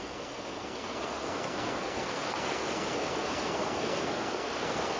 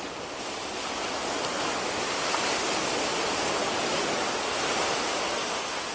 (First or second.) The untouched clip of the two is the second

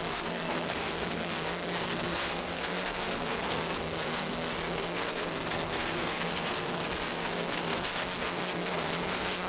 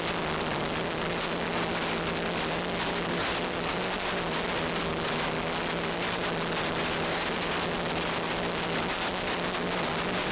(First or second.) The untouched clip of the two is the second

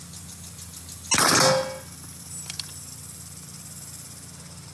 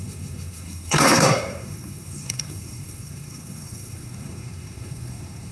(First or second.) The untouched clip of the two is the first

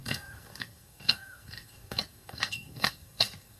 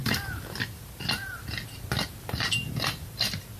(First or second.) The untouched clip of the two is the second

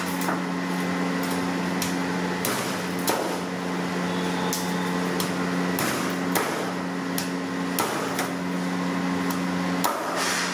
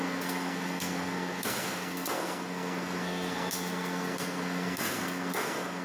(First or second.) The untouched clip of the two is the first